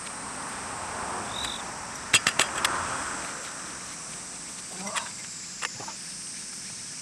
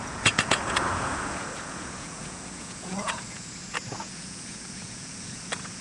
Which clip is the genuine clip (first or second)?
first